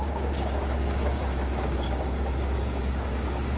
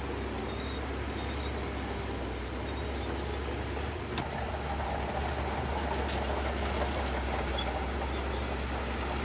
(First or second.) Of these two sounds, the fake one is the first